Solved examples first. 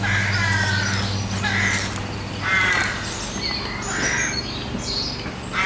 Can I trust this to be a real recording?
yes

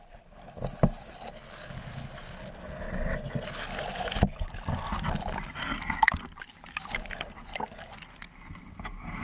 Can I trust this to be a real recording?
yes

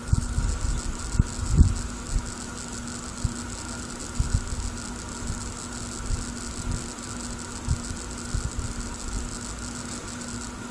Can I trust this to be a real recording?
yes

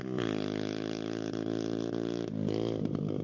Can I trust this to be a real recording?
yes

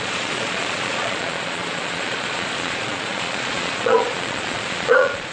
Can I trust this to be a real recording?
no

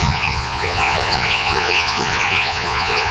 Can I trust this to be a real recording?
no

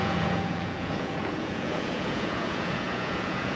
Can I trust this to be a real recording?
no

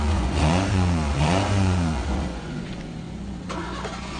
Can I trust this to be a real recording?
no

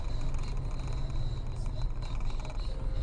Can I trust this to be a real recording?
yes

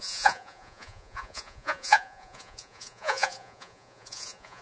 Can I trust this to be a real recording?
no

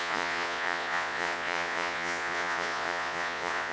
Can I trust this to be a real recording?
no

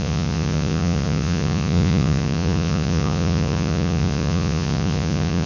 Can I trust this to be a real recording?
no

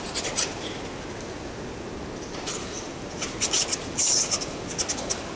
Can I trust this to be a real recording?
yes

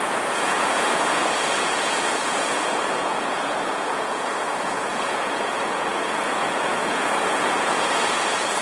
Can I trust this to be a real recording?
no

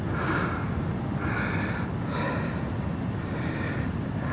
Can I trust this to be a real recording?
yes